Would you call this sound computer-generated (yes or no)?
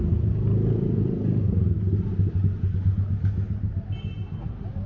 no